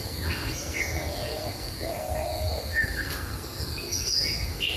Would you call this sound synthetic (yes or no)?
yes